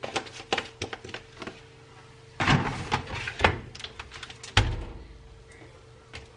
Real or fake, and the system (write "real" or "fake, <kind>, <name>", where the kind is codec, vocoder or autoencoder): real